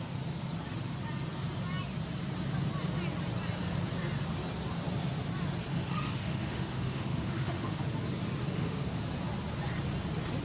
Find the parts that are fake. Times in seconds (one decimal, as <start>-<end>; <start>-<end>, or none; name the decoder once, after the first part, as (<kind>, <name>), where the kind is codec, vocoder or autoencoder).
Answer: 5.7-7.8 (autoencoder, DAC-VAE); 8.4-9.0